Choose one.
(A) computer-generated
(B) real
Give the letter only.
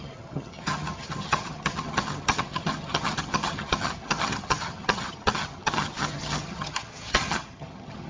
A